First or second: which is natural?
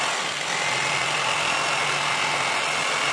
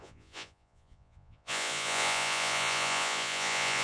first